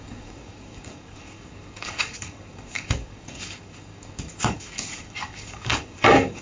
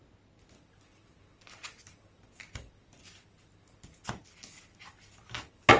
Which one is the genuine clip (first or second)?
second